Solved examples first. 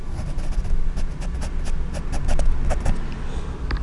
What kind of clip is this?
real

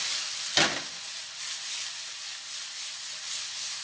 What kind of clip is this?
real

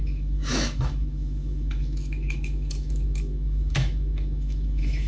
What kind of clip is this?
fake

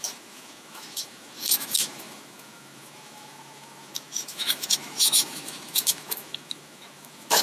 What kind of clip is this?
fake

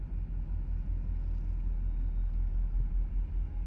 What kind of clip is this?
real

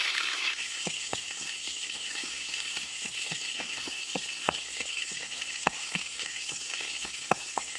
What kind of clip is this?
fake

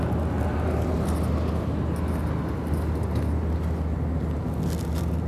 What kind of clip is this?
real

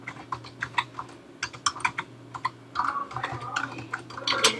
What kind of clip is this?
real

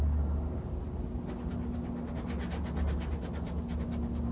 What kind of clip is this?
real